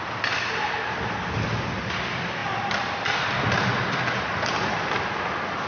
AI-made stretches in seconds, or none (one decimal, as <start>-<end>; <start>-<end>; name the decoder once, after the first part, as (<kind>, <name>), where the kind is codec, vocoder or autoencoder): none